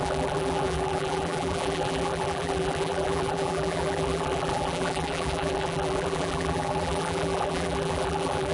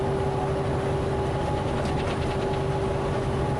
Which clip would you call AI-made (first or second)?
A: first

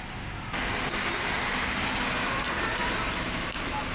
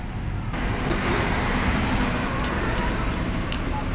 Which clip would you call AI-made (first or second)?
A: second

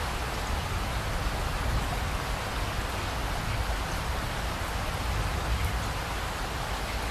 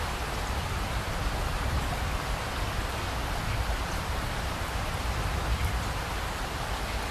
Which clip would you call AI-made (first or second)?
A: second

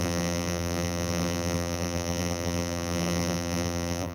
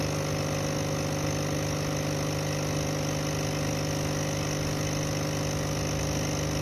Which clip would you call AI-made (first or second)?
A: first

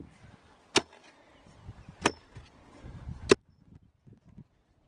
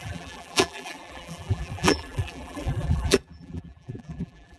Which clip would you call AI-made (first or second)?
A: second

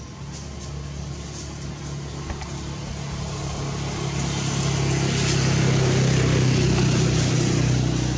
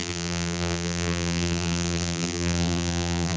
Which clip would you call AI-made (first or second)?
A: second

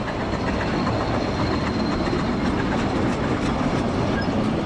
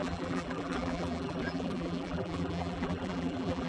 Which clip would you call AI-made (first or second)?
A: second